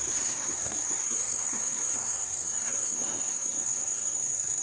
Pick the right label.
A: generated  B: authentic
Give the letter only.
A